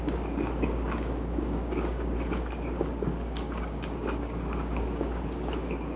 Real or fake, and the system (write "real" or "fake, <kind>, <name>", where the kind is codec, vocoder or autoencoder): fake, codec, DAC